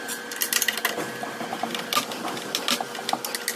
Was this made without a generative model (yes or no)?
yes